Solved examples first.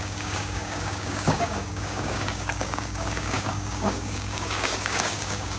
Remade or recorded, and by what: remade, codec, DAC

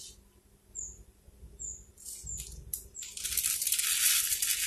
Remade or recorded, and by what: recorded